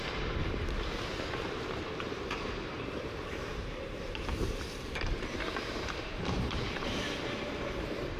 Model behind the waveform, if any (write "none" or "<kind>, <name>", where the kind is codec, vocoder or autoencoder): vocoder, BigVGAN v2